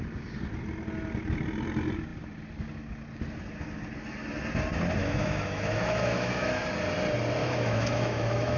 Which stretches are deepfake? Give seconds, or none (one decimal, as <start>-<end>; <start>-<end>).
5.0-6.6; 7.4-8.6